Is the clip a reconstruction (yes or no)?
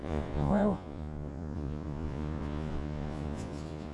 yes